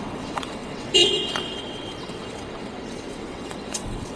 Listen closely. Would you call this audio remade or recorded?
remade